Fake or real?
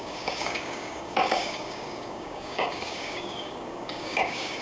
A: fake